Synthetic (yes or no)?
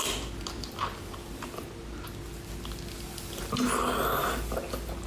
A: no